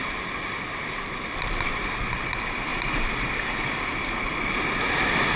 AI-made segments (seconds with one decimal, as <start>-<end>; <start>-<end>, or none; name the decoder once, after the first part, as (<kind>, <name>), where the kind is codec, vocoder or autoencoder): 0.0-1.8 (vocoder, BigVGAN v2)